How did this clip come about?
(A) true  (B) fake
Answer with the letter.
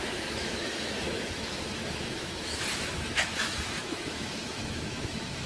B